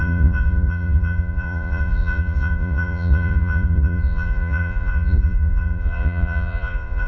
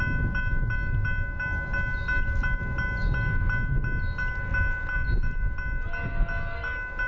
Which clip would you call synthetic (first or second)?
first